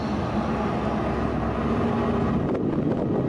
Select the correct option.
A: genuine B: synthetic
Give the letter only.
A